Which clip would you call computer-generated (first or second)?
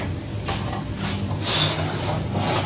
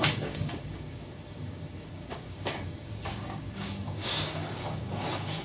second